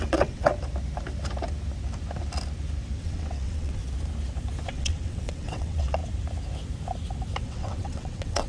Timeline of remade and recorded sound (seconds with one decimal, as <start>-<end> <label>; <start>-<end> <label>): 0.0-0.5 remade; 0.5-3.0 recorded; 3.0-3.8 remade; 3.8-4.7 recorded; 4.7-6.0 remade; 6.0-7.4 recorded; 7.4-8.5 remade